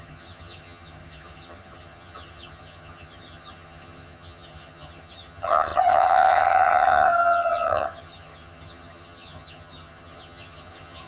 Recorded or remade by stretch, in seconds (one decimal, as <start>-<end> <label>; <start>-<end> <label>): 0.0-11.1 remade